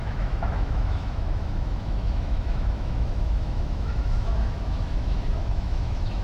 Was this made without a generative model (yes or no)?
no